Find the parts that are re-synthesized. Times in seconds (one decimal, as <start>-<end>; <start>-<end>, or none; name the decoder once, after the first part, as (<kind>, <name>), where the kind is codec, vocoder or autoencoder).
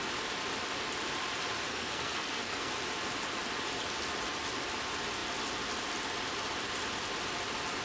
1.7-2.7 (codec, SNAC)